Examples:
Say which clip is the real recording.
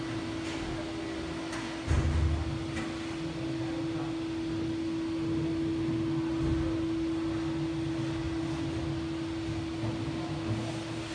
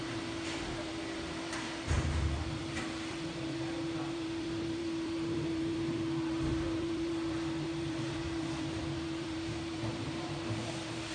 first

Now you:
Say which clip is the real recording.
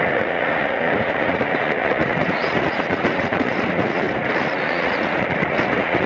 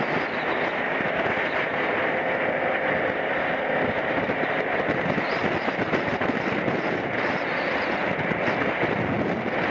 second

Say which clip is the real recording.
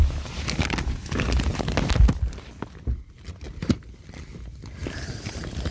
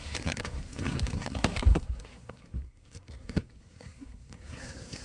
first